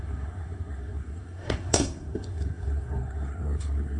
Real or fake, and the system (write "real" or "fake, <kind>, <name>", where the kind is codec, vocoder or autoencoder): fake, codec, SNAC